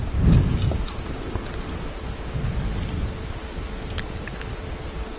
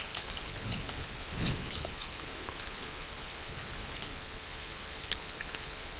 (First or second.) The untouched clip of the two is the first